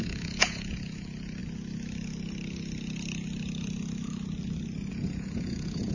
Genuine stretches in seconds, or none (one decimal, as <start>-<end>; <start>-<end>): 1.4-4.9